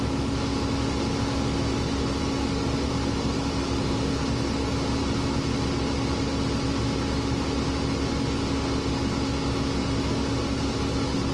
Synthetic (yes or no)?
no